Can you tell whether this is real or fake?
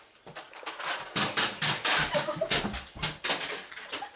real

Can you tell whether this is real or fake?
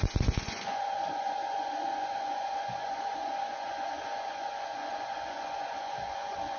fake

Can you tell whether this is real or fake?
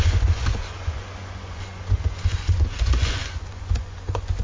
fake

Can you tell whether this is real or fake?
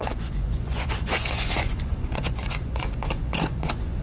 fake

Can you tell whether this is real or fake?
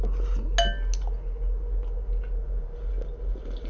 real